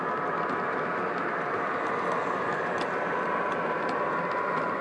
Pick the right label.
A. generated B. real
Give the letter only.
B